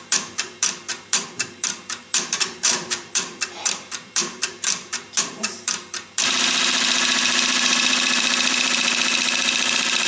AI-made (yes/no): yes